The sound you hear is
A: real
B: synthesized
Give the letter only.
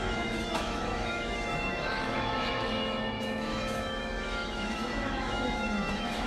B